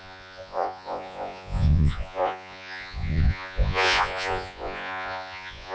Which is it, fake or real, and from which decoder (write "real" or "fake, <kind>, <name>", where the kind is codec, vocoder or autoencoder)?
fake, vocoder, Vocos